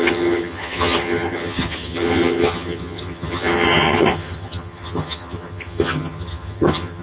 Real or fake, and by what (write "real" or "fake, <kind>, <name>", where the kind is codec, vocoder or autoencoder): fake, vocoder, HiFi-GAN